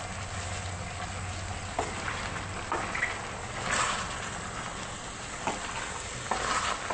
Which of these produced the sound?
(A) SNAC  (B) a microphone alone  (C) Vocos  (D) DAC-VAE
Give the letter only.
B